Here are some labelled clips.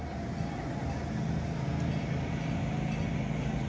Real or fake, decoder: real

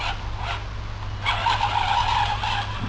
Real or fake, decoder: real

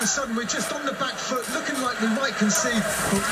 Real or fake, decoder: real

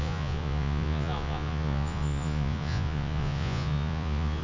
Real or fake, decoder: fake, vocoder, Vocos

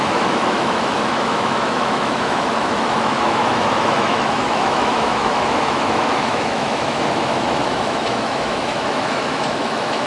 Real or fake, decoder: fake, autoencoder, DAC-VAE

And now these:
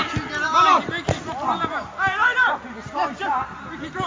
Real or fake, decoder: real